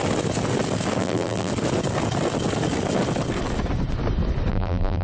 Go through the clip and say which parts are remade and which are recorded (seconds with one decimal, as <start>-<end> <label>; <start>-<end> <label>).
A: 0.0-1.0 recorded; 1.0-1.5 remade; 1.5-4.5 recorded; 4.5-5.0 remade